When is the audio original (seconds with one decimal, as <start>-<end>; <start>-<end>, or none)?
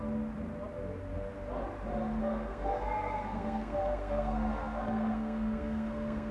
0.0-2.2